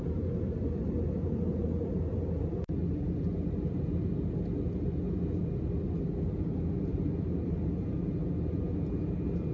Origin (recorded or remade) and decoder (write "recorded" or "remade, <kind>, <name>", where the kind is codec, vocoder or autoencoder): recorded